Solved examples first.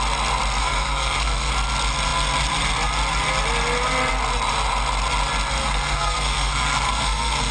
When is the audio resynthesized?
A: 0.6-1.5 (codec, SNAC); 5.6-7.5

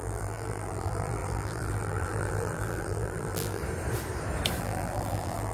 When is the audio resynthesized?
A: 0.0-3.6 (vocoder, BigVGAN v2); 4.6-5.5

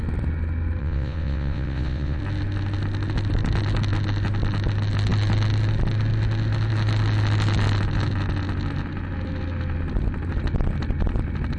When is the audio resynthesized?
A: 0.8-2.2 (vocoder, WaveNeXt)

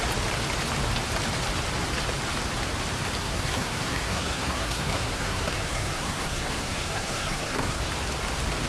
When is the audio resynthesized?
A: 3.2-7.8 (codec, SNAC)

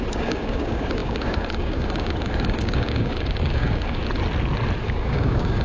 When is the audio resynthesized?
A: 0.0-4.0 (codec, DAC); 4.8-5.6